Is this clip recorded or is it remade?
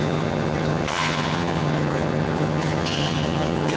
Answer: remade